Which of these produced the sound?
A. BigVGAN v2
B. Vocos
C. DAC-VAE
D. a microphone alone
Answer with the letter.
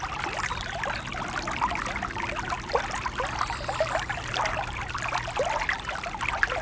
D